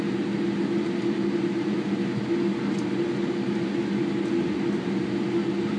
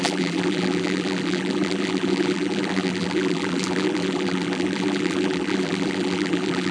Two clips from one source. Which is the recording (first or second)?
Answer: first